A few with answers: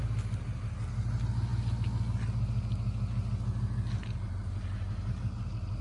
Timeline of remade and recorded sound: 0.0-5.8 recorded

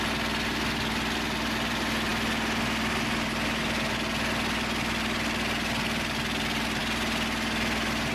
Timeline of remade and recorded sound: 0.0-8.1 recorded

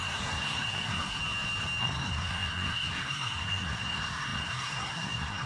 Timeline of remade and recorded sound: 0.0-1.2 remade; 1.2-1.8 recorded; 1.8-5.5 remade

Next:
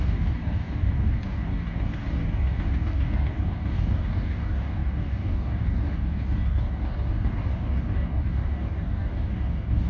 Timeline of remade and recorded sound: 0.0-9.9 remade

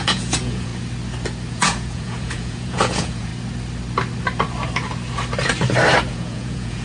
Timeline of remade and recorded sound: 0.0-0.7 remade; 0.7-1.5 recorded; 1.5-3.3 remade; 3.3-6.1 recorded; 6.1-6.8 remade